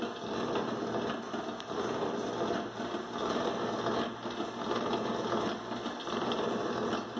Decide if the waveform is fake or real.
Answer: real